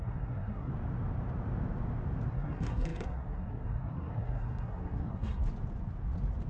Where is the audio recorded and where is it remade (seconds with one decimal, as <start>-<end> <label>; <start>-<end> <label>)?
0.0-0.7 remade; 0.7-2.3 recorded; 2.3-5.4 remade; 5.4-6.5 recorded